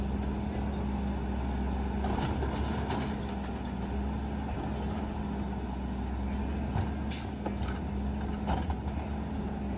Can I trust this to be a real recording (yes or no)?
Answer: yes